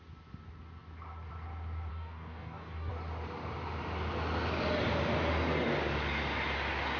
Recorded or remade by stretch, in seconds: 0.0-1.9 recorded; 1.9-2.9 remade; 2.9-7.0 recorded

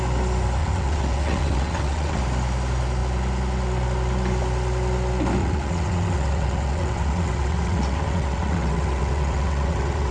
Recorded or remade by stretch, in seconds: 0.0-0.6 recorded; 0.6-2.2 remade; 2.2-5.4 recorded; 5.4-10.1 remade

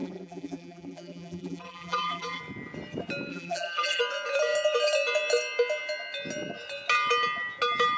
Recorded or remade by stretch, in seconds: 0.0-2.4 remade; 2.4-3.3 recorded; 3.3-4.0 remade; 4.0-8.0 recorded

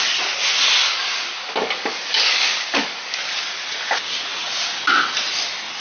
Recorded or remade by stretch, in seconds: 0.0-0.8 recorded; 0.8-3.2 remade; 3.2-5.8 recorded

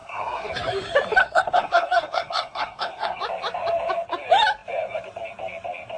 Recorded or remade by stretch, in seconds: 0.0-0.5 remade; 0.5-1.2 recorded; 1.2-3.2 remade; 3.2-6.0 recorded

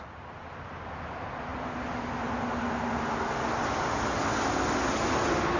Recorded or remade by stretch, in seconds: 0.0-5.6 recorded

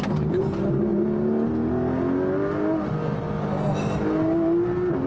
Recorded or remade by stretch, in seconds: 0.0-5.1 recorded

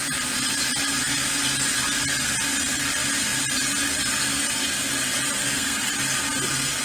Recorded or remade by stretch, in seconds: 0.0-5.4 recorded; 5.4-5.9 remade; 5.9-6.8 recorded